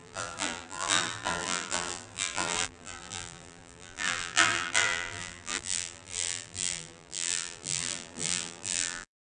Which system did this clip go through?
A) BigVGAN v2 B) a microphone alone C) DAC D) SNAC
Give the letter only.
A